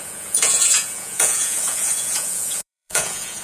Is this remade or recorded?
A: remade